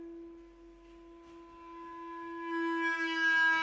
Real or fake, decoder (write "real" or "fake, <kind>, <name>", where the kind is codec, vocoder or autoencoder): real